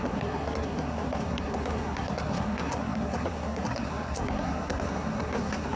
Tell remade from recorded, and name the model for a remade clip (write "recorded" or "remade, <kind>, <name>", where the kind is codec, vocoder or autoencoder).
remade, codec, SNAC